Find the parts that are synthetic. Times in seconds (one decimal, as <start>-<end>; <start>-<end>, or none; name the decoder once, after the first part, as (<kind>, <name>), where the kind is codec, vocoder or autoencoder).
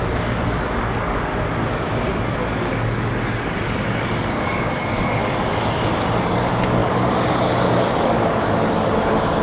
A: 0.0-1.3 (codec, DAC); 2.1-9.4